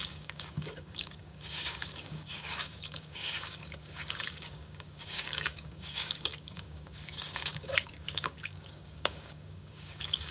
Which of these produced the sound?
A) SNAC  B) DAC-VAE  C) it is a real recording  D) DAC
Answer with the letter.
D